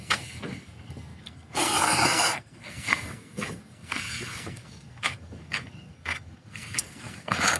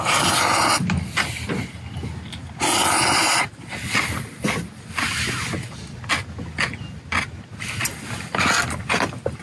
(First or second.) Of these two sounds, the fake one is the first